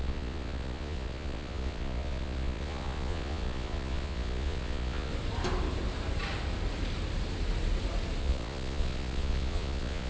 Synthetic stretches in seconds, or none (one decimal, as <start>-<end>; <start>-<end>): 0.0-5.1; 8.2-10.1